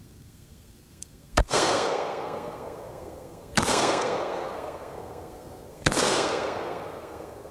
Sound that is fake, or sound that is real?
fake